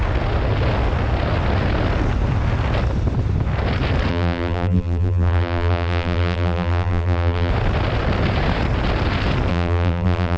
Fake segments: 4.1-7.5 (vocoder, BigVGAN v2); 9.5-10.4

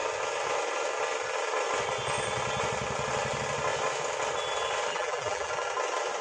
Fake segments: 4.9-5.5 (vocoder, BigVGAN v2)